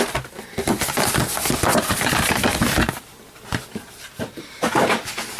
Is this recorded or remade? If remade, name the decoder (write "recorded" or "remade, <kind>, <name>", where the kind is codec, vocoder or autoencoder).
remade, vocoder, BigVGAN v2